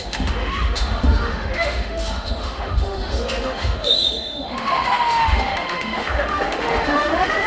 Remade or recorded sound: remade